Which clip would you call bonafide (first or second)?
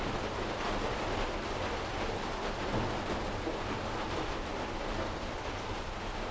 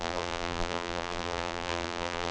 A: first